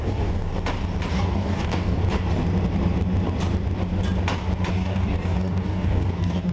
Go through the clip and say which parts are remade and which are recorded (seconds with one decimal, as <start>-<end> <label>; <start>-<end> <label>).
0.0-0.5 remade; 0.5-1.1 recorded; 1.1-2.0 remade; 2.0-4.7 recorded; 4.7-6.5 remade